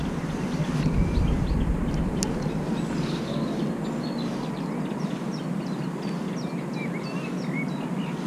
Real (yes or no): yes